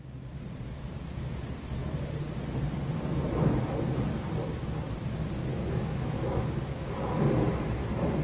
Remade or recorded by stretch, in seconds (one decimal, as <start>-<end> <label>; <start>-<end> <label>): 0.0-5.5 recorded; 5.5-7.2 remade; 7.2-8.2 recorded